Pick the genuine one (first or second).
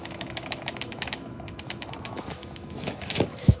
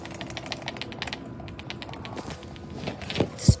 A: second